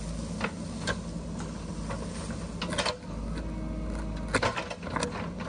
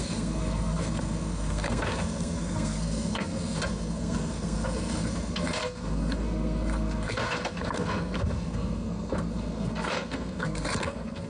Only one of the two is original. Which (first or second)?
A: first